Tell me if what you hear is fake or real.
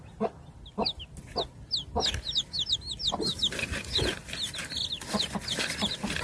real